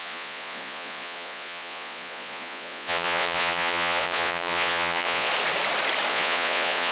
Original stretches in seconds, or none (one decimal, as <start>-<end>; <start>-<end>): 5.3-6.1